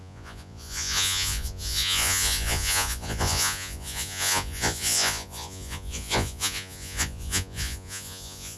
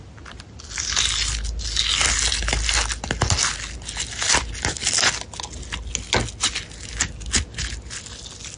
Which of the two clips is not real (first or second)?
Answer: first